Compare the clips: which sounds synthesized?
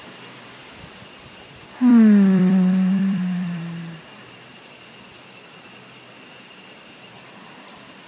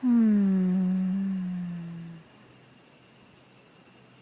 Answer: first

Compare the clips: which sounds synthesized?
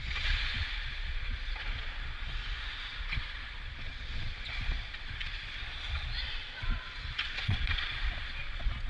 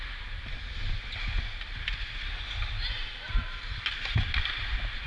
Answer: first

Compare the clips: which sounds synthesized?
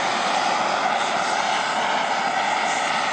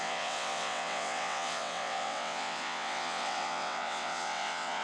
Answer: second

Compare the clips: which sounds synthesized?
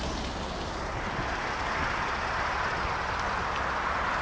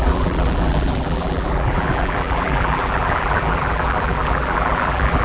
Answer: second